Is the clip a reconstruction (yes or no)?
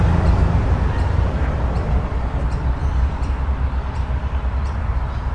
no